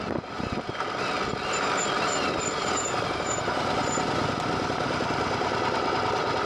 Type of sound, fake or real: real